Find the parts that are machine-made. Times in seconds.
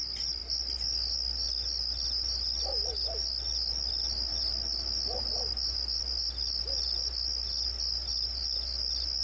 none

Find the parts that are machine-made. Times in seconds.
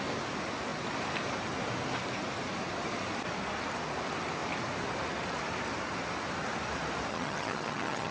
7.1-8.1 (vocoder, HiFi-GAN)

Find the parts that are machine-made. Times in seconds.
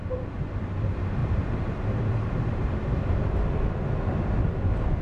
1.2-3.0 (vocoder, BigVGAN v2)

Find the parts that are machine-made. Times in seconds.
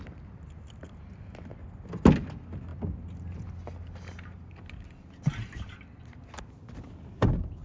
none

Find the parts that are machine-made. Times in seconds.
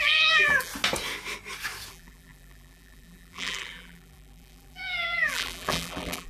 0.0-0.7 (vocoder, BigVGAN v2); 1.9-6.3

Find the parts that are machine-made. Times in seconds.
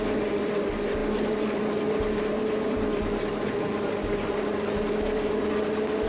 none